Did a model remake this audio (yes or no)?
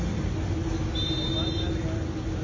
no